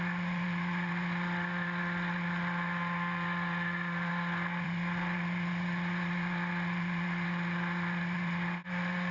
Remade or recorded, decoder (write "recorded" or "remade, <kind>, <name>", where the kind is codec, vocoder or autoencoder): remade, vocoder, BigVGAN v2